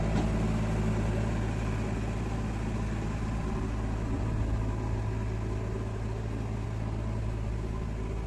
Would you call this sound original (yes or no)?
yes